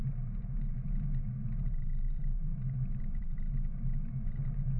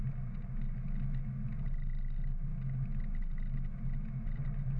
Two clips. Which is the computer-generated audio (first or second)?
first